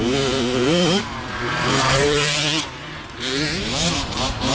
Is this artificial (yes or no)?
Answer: yes